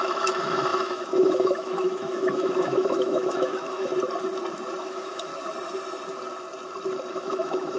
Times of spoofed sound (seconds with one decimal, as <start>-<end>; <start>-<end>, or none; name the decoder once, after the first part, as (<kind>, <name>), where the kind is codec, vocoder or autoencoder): 0.0-3.9 (autoencoder, DAC-VAE); 4.8-5.3; 7.1-7.8